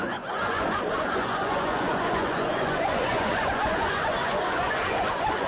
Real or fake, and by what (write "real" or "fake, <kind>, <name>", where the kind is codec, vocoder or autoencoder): fake, vocoder, Vocos